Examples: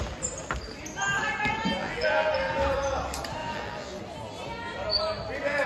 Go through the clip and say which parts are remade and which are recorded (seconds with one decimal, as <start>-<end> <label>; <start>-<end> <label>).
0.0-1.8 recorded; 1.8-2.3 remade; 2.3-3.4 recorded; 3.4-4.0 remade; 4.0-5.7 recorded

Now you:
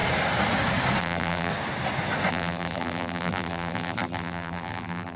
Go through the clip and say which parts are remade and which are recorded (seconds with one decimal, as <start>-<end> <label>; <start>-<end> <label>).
0.0-1.0 recorded; 1.0-1.5 remade; 1.5-2.3 recorded; 2.3-5.2 remade

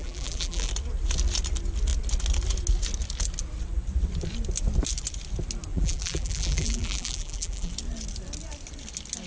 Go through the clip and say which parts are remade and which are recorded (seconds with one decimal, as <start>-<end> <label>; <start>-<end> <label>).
0.0-0.7 remade; 0.7-5.7 recorded; 5.7-7.7 remade; 7.7-9.3 recorded